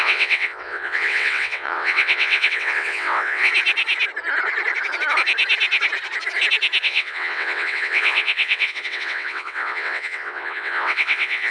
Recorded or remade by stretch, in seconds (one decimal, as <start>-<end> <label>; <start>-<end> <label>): 0.0-3.5 remade; 3.5-6.8 recorded; 6.8-11.5 remade